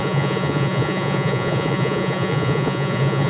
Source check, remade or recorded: remade